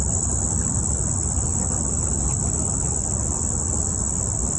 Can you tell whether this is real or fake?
real